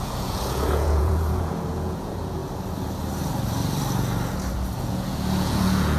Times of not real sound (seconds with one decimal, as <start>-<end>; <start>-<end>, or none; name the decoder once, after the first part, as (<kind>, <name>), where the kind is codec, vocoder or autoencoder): 0.0-2.4 (vocoder, Vocos); 4.8-6.0